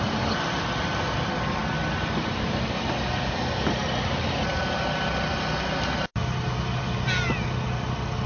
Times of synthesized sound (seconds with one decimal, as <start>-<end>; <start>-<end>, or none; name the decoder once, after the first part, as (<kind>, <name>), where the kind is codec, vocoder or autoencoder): none